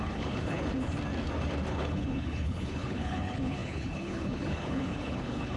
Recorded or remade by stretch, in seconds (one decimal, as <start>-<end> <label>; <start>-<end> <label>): 0.0-0.9 remade; 0.9-1.7 recorded; 1.7-5.6 remade